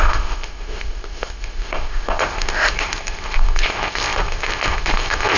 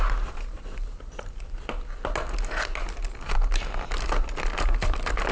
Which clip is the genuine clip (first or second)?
second